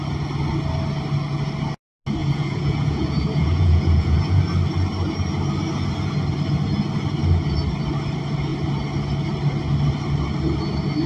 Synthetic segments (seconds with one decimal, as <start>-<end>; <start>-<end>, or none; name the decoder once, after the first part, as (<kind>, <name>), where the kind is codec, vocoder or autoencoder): 2.2-4.4 (vocoder, Vocos)